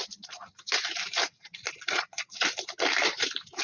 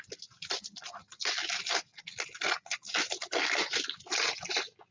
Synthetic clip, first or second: first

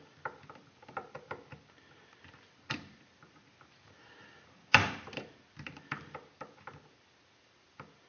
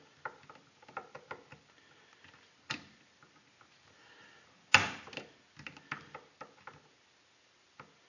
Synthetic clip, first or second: first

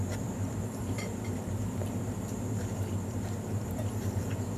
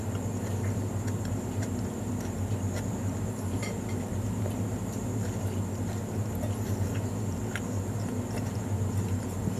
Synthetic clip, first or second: first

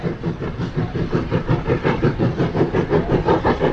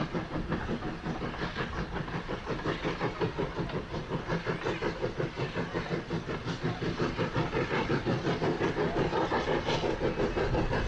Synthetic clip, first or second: first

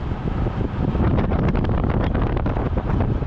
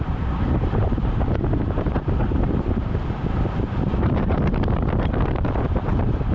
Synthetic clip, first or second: second